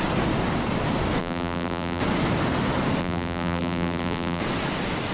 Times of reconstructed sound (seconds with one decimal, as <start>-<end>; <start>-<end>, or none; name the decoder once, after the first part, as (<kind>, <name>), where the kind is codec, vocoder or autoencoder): 1.2-2.0 (vocoder, BigVGAN v2); 3.0-4.4